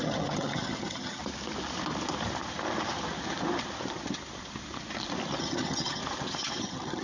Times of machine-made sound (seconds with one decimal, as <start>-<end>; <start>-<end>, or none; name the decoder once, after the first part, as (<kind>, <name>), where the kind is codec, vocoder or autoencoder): 0.0-1.2 (vocoder, HiFi-GAN); 5.4-6.0; 6.6-7.0